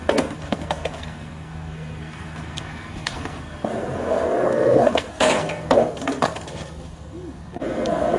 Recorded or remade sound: remade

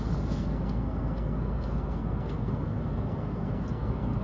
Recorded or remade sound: remade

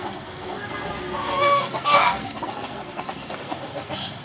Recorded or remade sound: remade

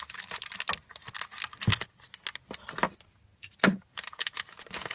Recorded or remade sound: recorded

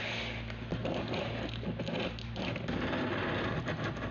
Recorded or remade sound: recorded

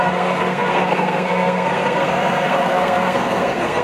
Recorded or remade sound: remade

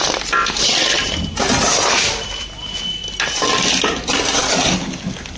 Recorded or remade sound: recorded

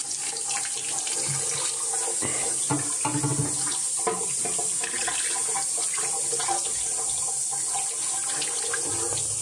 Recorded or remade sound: recorded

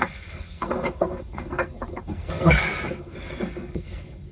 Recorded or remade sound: remade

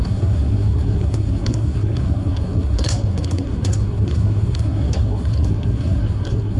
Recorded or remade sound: remade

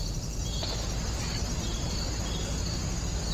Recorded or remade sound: recorded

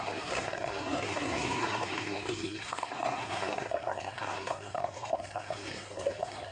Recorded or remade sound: remade